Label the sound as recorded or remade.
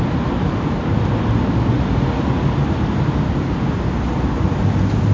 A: recorded